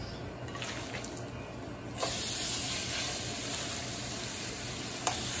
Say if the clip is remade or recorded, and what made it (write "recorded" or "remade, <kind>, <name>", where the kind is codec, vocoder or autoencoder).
recorded